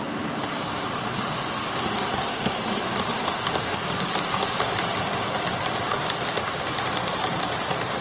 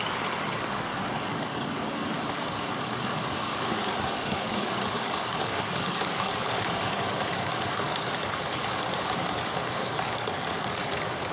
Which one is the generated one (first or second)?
second